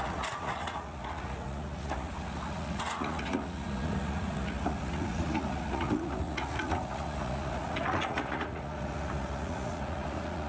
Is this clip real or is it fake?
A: fake